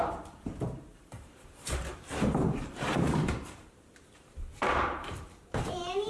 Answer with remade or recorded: remade